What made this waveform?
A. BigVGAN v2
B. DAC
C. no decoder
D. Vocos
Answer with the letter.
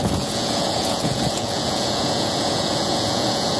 D